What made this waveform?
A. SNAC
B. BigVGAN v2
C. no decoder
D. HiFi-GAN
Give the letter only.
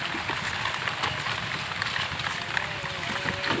C